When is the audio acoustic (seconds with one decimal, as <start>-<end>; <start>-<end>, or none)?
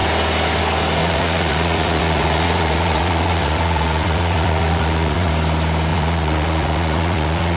0.0-1.0; 5.3-5.9